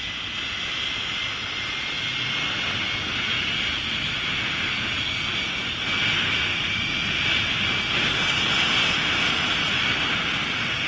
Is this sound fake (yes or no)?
no